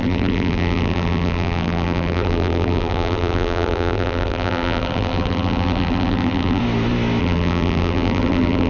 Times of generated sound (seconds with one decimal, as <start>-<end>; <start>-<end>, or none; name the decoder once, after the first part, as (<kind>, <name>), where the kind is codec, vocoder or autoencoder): 0.0-6.6 (vocoder, BigVGAN v2); 7.2-8.7